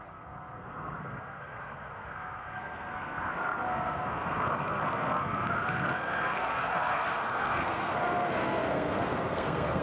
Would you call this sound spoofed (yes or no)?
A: yes